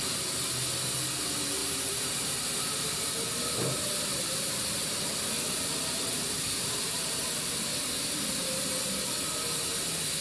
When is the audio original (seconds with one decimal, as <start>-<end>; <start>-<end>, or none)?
0.0-1.6; 2.9-4.1; 7.5-10.2